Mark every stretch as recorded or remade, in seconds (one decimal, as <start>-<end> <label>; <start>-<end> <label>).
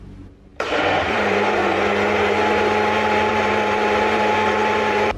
0.0-1.6 remade; 1.6-3.3 recorded; 3.3-5.2 remade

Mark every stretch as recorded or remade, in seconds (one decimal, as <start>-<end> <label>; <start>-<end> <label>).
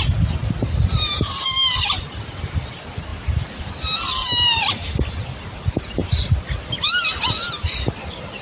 0.0-3.1 recorded; 3.1-3.6 remade; 3.6-6.0 recorded; 6.0-8.0 remade; 8.0-8.4 recorded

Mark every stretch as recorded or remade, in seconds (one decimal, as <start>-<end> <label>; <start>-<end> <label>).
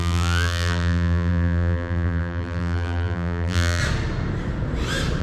0.0-3.8 remade; 3.8-5.2 recorded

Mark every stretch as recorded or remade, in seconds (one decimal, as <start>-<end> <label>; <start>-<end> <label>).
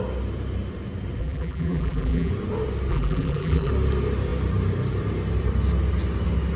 0.0-1.2 recorded; 1.2-2.3 remade; 2.3-2.9 recorded; 2.9-3.7 remade; 3.7-6.6 recorded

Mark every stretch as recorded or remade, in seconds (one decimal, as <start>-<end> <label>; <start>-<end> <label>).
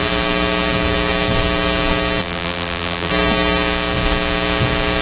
0.0-2.2 recorded; 2.2-3.1 remade; 3.1-5.0 recorded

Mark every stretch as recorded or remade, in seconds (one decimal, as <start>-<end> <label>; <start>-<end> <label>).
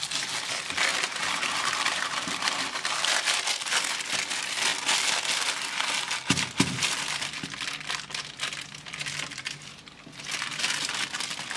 0.0-0.9 recorded; 0.9-2.2 remade; 2.2-11.6 recorded